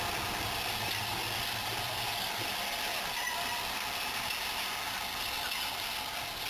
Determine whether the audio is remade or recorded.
recorded